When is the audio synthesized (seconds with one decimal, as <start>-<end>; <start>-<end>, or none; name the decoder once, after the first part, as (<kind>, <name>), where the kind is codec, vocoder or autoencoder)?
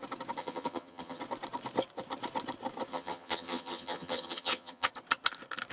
0.4-1.2 (vocoder, HiFi-GAN); 2.9-4.9